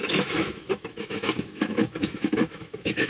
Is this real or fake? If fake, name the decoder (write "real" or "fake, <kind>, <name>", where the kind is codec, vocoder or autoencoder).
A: fake, autoencoder, DAC-VAE